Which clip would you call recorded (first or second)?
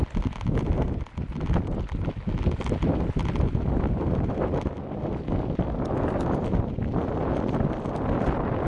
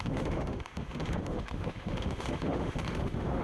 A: first